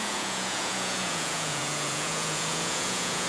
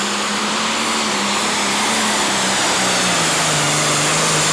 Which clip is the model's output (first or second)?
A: first